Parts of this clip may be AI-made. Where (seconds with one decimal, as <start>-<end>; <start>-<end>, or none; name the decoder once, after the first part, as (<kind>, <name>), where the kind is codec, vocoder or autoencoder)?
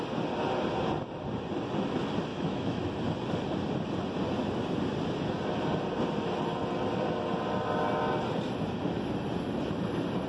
2.3-2.8 (autoencoder, DAC-VAE)